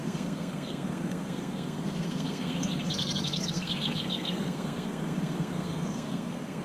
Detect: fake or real fake